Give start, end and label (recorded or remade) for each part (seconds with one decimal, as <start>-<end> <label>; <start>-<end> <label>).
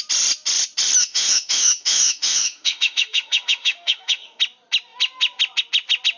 0.0-1.0 recorded; 1.0-4.4 remade; 4.4-6.2 recorded